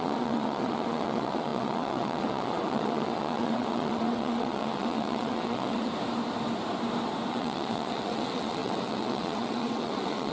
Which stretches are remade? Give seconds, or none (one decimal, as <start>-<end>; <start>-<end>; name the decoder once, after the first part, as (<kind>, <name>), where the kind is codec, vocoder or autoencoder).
0.0-5.9 (vocoder, WaveNeXt); 7.3-10.3